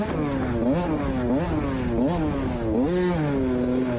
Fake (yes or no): no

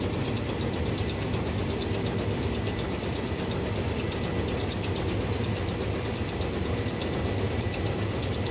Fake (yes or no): no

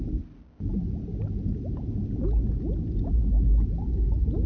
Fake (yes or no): no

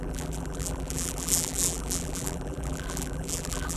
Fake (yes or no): yes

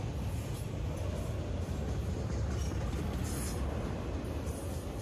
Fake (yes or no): no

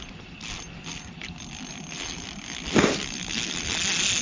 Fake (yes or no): no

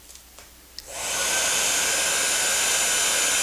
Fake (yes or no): no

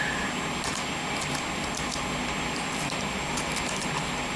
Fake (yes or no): no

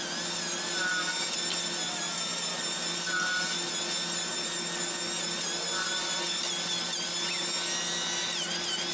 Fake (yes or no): no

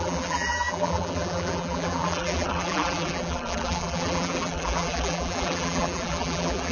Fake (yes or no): yes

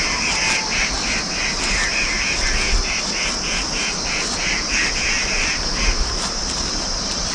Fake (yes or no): no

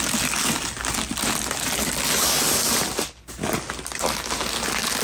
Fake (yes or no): no